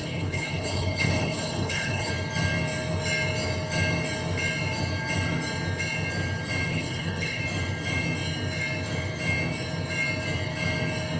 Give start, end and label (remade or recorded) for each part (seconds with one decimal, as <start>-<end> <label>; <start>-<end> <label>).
0.0-2.1 remade; 2.1-6.7 recorded; 6.7-7.4 remade; 7.4-11.2 recorded

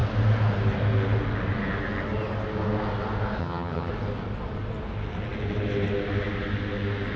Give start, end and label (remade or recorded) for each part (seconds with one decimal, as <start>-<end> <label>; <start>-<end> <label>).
0.0-3.4 recorded; 3.4-3.9 remade; 3.9-7.2 recorded

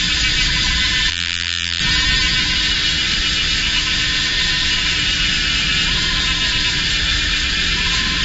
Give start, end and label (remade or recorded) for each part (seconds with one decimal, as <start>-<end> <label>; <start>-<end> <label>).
0.0-1.1 recorded; 1.1-1.8 remade; 1.8-8.2 recorded